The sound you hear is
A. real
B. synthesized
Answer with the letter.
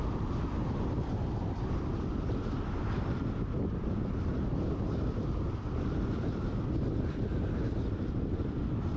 B